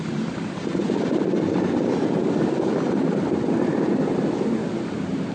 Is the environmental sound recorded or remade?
recorded